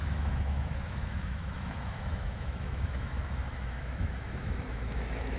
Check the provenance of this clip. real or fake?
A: fake